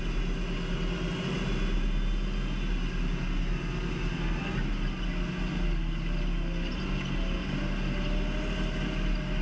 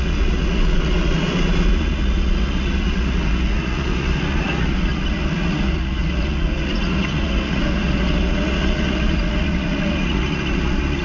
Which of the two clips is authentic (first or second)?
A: first